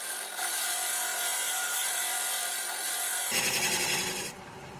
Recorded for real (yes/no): no